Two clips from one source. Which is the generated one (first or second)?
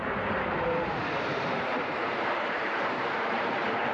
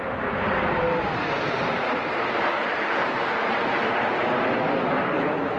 first